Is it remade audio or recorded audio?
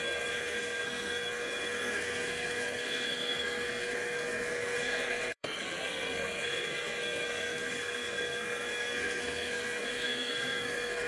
remade